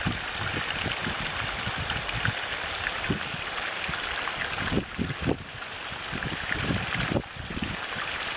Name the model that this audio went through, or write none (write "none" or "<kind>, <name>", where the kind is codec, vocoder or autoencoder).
none